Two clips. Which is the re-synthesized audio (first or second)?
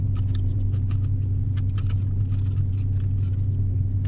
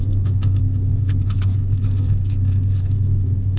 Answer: second